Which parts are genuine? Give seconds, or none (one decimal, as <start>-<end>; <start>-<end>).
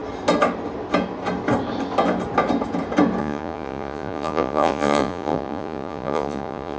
0.0-3.2